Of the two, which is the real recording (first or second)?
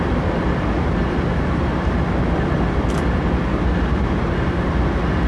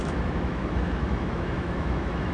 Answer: first